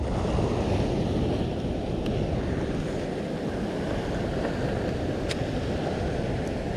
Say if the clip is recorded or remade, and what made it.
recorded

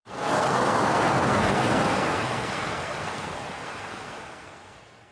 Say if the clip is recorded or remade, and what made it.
remade, codec, SNAC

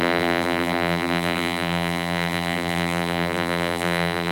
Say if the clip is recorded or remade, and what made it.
remade, vocoder, BigVGAN v2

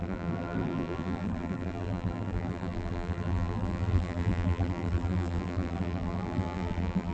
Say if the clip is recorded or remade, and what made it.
remade, vocoder, BigVGAN v2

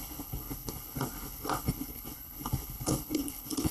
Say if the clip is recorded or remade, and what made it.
remade, codec, HILCodec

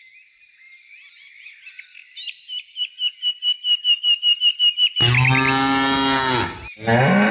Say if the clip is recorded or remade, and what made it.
recorded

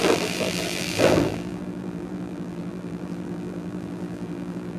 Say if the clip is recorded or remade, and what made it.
remade, vocoder, BigVGAN v2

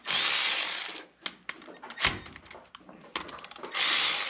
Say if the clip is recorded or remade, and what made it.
recorded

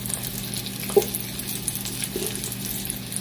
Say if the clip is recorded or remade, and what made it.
recorded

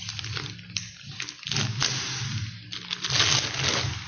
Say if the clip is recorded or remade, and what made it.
recorded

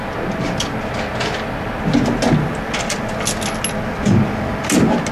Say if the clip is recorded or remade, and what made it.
recorded